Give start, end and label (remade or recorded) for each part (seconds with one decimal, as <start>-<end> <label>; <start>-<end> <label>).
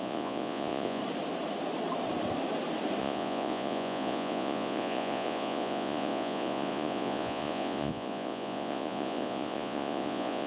0.0-1.0 remade; 1.0-3.0 recorded; 3.0-10.5 remade